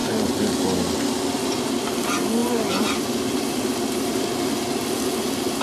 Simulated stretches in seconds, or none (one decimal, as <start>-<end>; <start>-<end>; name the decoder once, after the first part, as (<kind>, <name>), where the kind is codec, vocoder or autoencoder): 2.4-4.2 (vocoder, BigVGAN v2)